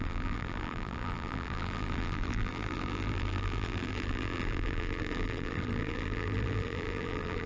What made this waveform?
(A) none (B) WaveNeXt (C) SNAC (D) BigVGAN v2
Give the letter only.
D